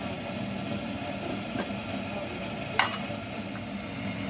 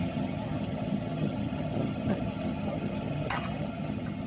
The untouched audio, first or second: first